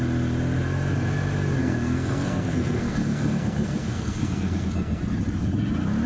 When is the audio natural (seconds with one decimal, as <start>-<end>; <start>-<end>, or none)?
0.0-1.6; 5.0-6.1